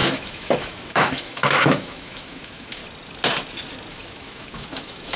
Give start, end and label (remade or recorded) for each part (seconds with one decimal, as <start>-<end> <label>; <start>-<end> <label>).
0.0-2.8 remade; 2.8-3.9 recorded; 3.9-5.2 remade